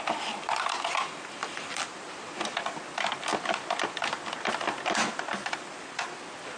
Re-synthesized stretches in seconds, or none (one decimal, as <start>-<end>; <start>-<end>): 1.4-2.8; 3.3-6.0

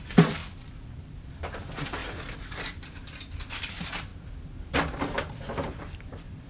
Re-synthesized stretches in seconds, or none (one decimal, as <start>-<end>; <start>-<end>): 0.0-2.0; 2.7-4.1; 5.3-6.5

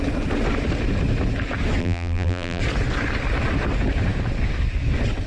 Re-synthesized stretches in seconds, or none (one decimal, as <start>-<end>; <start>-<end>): 1.8-2.6

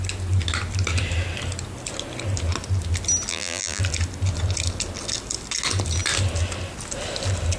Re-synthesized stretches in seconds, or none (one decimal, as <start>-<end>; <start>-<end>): 3.3-3.8

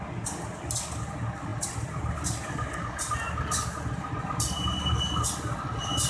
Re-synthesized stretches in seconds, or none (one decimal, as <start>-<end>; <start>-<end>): none